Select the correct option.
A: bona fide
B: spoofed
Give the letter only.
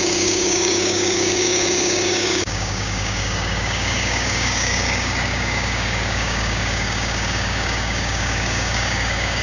B